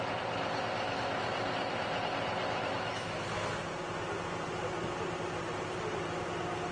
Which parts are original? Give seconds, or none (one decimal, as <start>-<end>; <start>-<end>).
0.0-2.4; 3.6-6.7